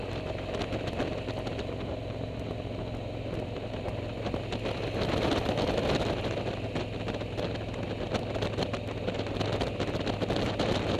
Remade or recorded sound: recorded